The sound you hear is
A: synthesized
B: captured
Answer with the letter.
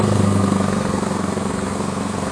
A